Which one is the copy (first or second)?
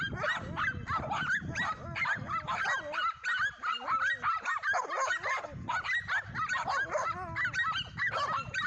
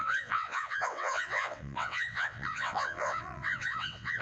second